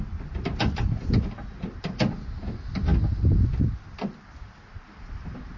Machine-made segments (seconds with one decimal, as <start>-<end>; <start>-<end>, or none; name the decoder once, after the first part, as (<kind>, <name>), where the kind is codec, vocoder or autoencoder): none